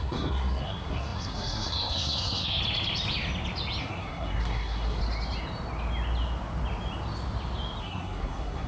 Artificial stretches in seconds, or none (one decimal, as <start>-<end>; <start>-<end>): 0.0-2.6; 3.8-5.0; 7.8-8.7